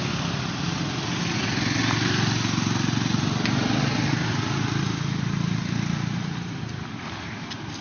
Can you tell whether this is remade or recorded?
recorded